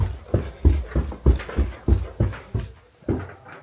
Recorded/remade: recorded